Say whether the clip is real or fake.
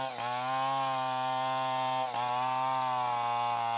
real